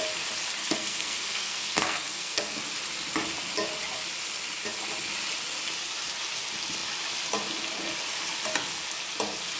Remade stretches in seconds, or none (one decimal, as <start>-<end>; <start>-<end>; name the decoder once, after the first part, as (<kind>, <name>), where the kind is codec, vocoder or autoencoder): 0.6-2.6 (codec, SNAC)